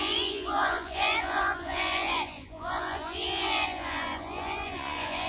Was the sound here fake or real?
fake